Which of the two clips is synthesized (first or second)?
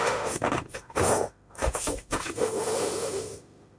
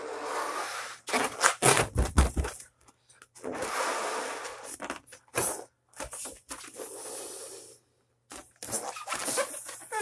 first